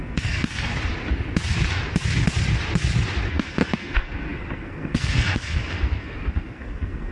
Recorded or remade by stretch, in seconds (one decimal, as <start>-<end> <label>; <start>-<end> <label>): 0.0-0.7 remade; 0.7-3.3 recorded; 3.3-7.1 remade